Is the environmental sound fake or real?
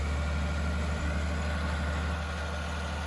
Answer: real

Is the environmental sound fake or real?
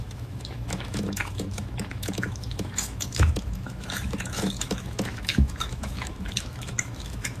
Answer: fake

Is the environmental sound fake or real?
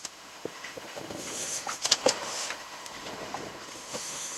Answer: fake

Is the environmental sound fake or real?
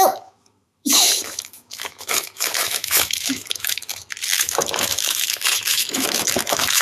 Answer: fake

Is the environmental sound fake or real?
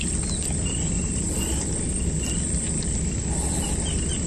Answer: real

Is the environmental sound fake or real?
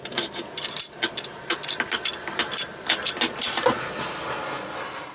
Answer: real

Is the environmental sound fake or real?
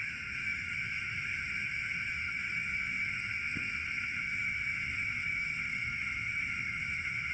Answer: fake